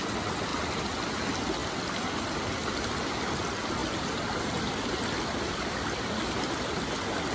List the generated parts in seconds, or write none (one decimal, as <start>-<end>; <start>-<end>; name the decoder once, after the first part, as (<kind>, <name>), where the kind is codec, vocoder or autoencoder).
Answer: none